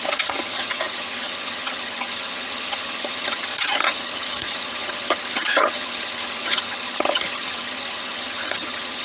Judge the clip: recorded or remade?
remade